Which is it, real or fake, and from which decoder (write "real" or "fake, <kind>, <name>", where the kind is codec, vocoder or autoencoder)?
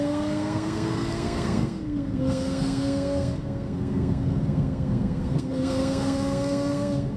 fake, codec, SNAC